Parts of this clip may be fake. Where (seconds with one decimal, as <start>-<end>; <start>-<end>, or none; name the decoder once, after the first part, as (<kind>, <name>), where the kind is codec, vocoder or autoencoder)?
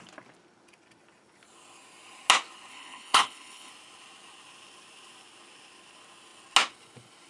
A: 2.7-3.7 (codec, HILCodec)